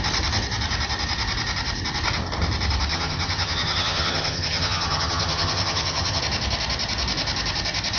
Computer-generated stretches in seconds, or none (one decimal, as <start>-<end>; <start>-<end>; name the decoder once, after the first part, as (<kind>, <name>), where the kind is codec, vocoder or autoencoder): 2.9-6.2 (vocoder, HiFi-GAN)